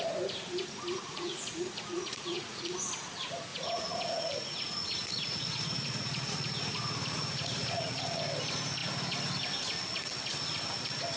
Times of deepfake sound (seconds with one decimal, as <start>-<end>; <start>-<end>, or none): 1.0-2.8; 3.5-8.2